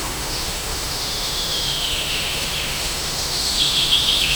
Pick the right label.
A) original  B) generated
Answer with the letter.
B